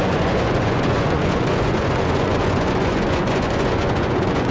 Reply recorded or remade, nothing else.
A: remade